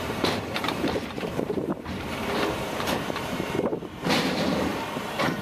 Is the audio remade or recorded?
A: remade